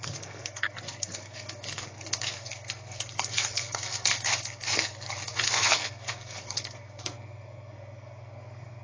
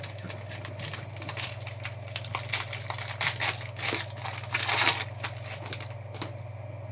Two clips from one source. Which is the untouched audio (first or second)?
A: second